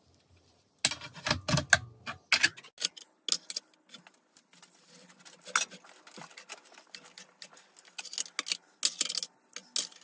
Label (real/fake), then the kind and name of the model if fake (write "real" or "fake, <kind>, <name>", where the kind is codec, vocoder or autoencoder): real